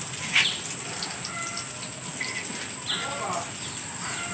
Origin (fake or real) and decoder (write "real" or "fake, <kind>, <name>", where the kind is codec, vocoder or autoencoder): real